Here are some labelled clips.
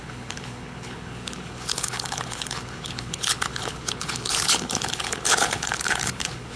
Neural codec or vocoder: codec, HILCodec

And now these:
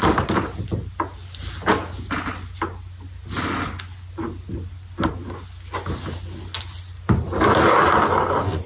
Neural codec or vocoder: none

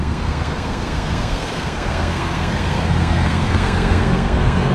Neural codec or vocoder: codec, SNAC